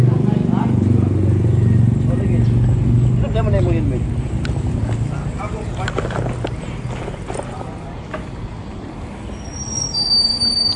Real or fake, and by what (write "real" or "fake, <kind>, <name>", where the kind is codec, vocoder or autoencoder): real